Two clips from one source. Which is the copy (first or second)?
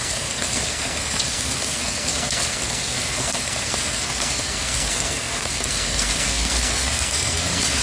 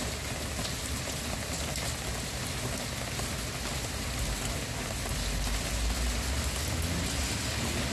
first